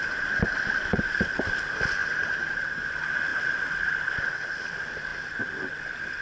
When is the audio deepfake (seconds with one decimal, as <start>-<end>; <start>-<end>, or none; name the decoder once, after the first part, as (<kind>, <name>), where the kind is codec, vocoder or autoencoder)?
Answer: none